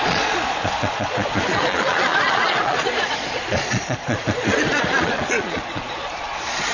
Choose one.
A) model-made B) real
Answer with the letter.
A